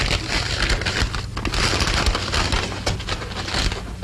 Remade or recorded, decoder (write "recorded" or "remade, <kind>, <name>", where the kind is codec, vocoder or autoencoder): recorded